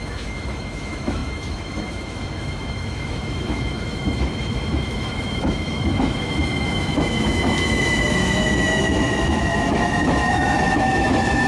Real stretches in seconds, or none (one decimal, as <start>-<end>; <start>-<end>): none